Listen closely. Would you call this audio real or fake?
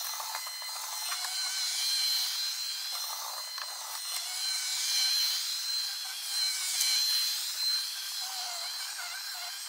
real